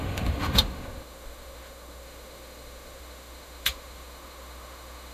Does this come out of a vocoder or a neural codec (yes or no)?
yes